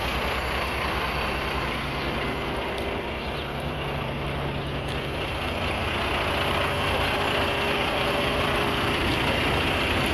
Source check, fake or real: fake